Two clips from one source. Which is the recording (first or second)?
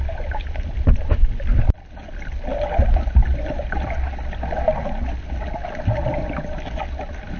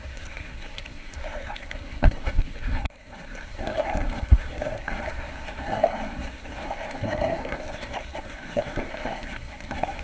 first